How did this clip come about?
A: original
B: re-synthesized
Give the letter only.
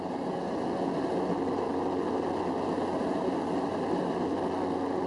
A